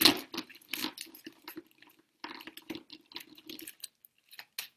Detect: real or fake real